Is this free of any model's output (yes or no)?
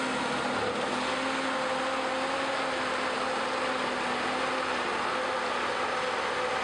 yes